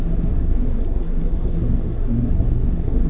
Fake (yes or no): yes